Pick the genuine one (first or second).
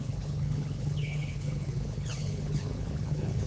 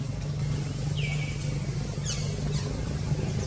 second